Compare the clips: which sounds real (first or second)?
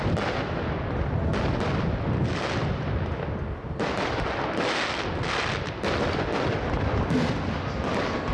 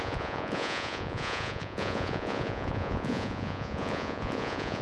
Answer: first